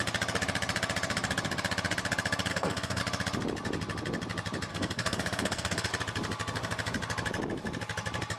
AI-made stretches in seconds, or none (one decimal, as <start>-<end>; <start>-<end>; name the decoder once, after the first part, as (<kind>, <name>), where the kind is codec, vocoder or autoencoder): 2.5-3.0 (codec, SNAC); 4.7-5.9

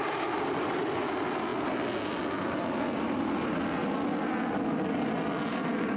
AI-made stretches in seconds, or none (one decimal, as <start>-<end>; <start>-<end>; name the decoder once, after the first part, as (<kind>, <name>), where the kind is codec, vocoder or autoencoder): none

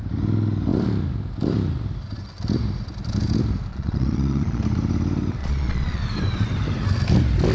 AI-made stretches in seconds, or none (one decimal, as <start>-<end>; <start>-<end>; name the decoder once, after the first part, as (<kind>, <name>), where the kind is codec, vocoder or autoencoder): 3.7-4.6 (vocoder, Vocos); 5.4-6.0

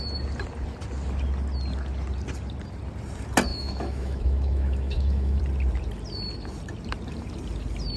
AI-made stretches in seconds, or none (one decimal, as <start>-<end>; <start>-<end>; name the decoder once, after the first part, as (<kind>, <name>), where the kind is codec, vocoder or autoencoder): 3.5-5.4 (autoencoder, DAC-VAE)

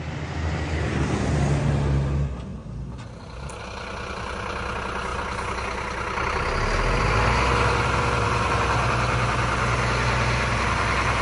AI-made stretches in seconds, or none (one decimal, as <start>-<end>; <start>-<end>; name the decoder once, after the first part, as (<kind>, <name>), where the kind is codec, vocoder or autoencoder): none